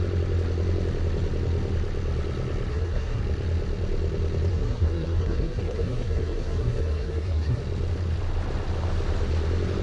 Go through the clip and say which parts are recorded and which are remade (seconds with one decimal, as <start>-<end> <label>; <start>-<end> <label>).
0.0-2.7 recorded; 2.7-3.2 remade; 3.2-4.5 recorded; 4.5-7.6 remade; 7.6-9.8 recorded